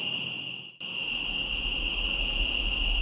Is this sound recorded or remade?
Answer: recorded